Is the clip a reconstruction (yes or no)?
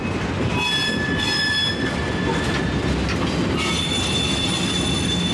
no